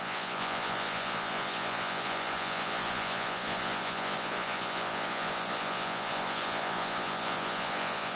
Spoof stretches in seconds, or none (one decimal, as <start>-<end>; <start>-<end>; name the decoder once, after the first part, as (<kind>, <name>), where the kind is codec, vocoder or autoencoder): 0.0-8.2 (vocoder, Vocos)